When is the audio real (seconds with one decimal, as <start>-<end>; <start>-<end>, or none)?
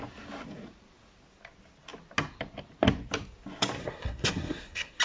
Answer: 0.0-3.8